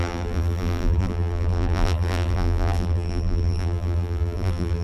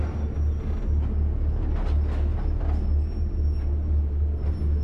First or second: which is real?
second